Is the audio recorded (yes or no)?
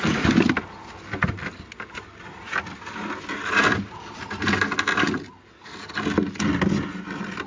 yes